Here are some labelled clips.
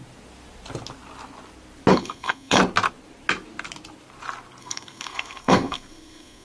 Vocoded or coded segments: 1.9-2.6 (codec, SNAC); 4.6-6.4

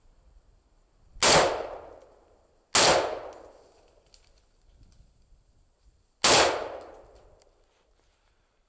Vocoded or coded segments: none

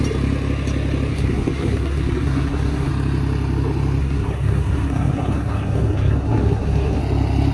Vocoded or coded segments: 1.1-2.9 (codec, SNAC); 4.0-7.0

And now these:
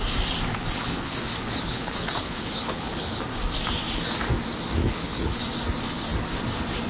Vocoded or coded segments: 0.5-3.2 (codec, HILCodec); 4.8-5.4

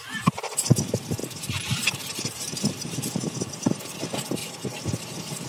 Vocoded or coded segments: 1.2-3.8 (vocoder, BigVGAN v2)